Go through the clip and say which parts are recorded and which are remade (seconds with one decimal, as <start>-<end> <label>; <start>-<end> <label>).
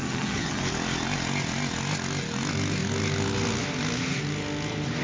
0.0-0.6 remade; 0.6-5.0 recorded